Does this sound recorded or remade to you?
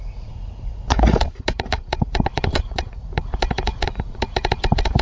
remade